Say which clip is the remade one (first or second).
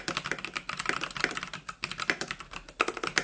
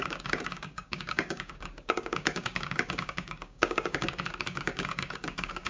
second